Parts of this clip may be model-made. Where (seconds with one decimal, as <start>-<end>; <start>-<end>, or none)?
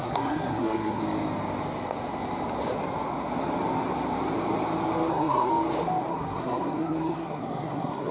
0.0-1.0; 5.1-5.5; 6.1-8.1